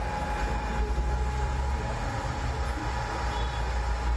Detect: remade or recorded recorded